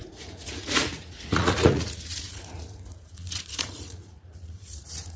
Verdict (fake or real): fake